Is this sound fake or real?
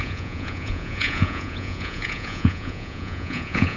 fake